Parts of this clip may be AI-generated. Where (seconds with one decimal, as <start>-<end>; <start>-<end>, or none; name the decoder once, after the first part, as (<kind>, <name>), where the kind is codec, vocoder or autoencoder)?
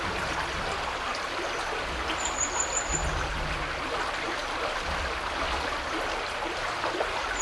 none